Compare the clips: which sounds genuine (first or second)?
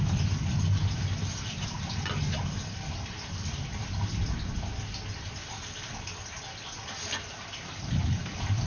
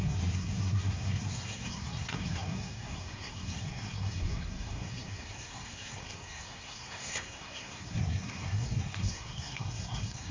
first